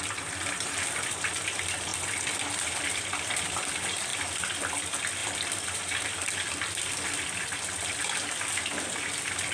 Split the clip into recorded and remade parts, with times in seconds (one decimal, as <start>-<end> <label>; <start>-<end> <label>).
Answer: 0.0-1.9 recorded; 1.9-3.5 remade; 3.5-5.2 recorded; 5.2-8.0 remade; 8.0-9.5 recorded